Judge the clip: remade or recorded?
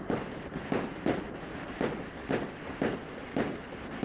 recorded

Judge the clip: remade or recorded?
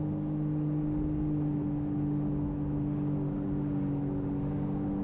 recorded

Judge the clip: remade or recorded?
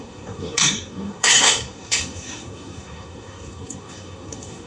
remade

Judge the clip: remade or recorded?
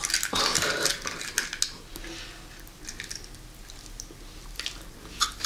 recorded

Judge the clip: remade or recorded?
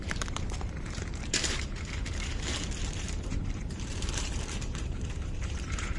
remade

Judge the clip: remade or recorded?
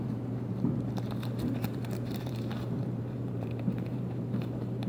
remade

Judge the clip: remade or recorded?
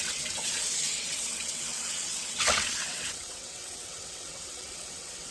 remade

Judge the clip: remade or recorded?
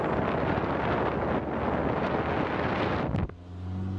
recorded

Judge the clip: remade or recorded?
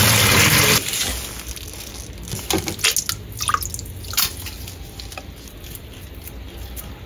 recorded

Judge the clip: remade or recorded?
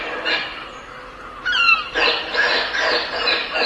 recorded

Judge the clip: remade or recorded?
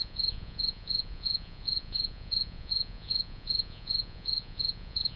remade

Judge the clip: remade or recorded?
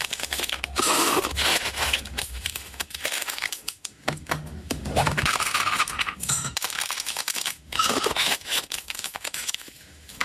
remade